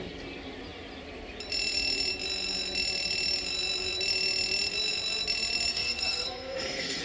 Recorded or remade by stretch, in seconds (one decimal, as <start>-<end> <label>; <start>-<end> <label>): 0.0-5.7 recorded; 5.7-7.0 remade